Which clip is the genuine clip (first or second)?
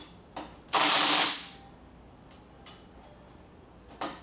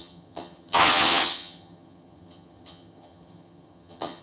first